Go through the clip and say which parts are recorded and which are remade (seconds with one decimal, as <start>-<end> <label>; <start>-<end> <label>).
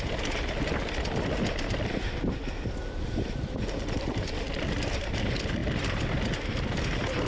0.0-7.3 recorded